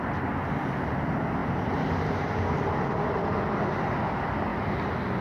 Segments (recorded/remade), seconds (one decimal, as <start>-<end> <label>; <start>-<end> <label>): 0.0-5.2 recorded